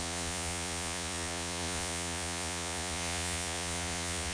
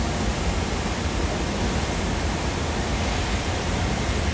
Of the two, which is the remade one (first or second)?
first